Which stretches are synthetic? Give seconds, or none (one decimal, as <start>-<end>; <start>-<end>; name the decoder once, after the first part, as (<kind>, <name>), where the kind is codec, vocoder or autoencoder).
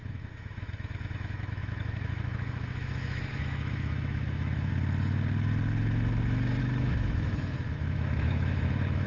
0.0-4.7 (autoencoder, DAC-VAE); 6.6-9.1